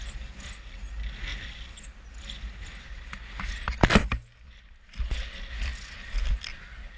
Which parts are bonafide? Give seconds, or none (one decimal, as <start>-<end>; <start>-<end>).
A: 0.0-7.0